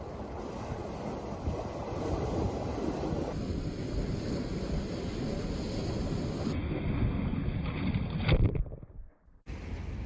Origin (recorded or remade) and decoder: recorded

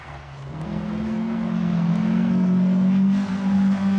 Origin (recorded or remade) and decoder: remade, codec, SNAC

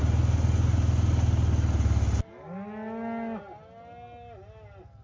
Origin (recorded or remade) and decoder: recorded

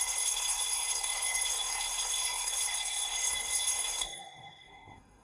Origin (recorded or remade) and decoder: remade, codec, SNAC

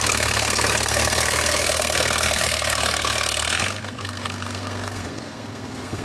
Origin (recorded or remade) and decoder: remade, codec, SNAC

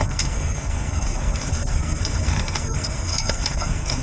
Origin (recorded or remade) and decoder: remade, codec, SNAC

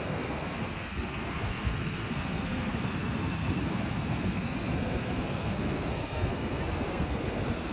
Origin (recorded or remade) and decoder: remade, codec, SNAC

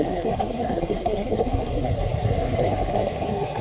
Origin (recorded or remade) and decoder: remade, codec, SNAC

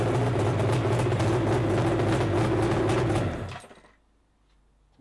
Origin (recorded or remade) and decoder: recorded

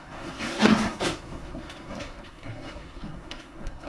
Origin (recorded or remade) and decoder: remade, codec, SNAC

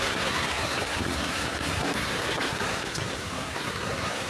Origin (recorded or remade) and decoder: remade, codec, SNAC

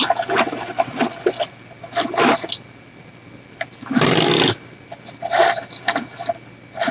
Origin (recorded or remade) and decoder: recorded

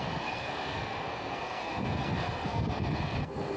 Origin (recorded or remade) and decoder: remade, codec, SNAC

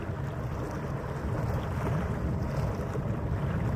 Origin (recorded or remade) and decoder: recorded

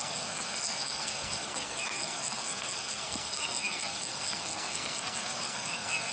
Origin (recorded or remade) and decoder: remade, codec, SNAC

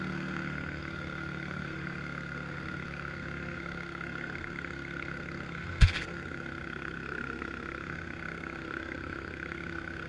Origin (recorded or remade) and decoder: remade, codec, SNAC